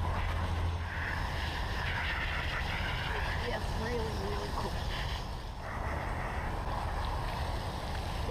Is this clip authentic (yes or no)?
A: yes